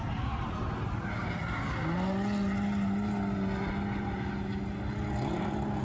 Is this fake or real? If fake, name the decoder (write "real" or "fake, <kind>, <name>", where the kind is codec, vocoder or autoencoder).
real